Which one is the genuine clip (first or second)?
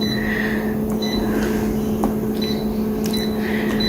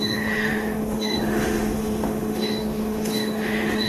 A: first